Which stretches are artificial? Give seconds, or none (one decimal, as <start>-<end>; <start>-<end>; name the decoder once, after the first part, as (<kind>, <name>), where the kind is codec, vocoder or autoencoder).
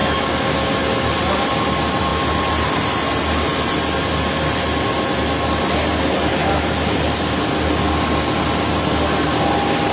0.0-0.7 (codec, DAC)